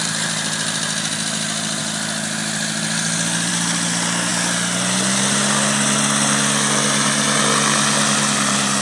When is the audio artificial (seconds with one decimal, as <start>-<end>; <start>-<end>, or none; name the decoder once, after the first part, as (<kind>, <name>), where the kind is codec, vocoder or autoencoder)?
none